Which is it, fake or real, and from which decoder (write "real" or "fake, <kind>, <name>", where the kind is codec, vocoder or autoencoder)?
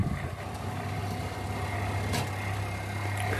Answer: real